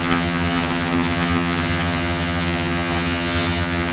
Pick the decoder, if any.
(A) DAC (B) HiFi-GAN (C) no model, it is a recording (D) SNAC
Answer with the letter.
B